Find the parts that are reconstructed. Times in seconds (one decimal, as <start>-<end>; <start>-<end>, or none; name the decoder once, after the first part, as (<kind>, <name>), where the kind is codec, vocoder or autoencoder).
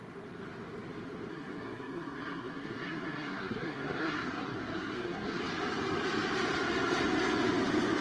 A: 1.3-5.4 (codec, SNAC)